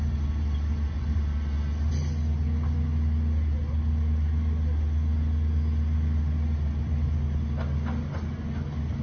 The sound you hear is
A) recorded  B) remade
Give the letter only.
A